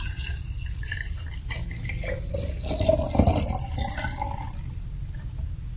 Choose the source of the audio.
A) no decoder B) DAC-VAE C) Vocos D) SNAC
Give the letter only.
A